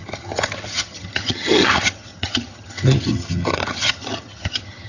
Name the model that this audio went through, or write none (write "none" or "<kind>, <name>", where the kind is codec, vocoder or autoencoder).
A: vocoder, HiFi-GAN